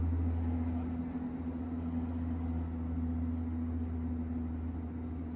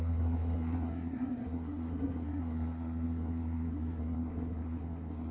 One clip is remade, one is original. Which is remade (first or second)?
second